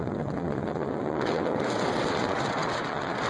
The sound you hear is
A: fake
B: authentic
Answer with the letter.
A